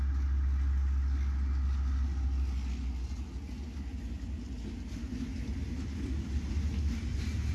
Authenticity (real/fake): real